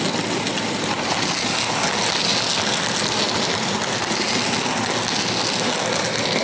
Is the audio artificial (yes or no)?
no